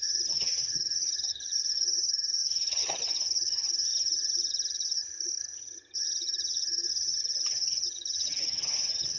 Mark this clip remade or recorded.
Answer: remade